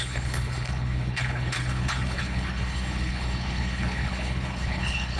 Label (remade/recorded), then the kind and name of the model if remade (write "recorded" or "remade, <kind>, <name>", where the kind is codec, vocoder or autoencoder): remade, codec, HILCodec